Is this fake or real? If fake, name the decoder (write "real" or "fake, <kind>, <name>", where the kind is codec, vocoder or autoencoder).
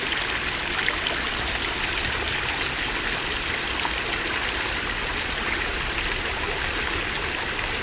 real